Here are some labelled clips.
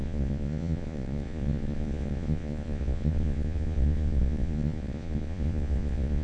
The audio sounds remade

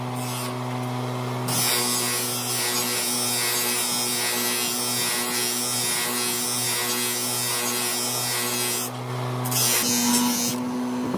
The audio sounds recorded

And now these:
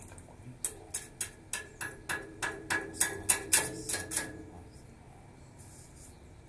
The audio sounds recorded